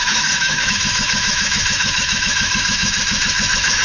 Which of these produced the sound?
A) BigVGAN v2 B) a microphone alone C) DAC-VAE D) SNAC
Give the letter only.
C